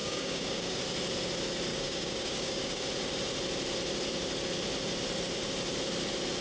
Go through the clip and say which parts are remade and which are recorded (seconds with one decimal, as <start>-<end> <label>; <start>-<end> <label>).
0.0-0.8 remade; 0.8-1.7 recorded; 1.7-2.8 remade; 2.8-6.4 recorded

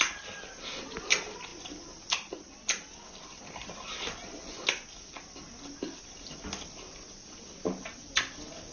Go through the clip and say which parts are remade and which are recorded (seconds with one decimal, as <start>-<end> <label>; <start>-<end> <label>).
0.0-8.7 recorded

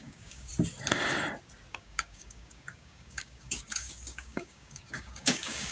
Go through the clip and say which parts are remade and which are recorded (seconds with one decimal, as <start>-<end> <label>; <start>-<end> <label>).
0.0-0.5 remade; 0.5-1.7 recorded; 1.7-5.7 remade

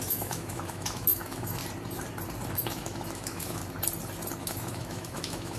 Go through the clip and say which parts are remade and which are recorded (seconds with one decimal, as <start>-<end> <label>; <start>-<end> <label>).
0.0-1.6 remade; 1.6-2.5 recorded; 2.5-3.6 remade; 3.6-4.4 recorded; 4.4-5.6 remade

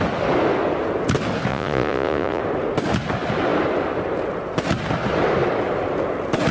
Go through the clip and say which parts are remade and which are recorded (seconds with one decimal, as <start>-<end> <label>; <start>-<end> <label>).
0.0-1.5 recorded; 1.5-2.4 remade; 2.4-6.5 recorded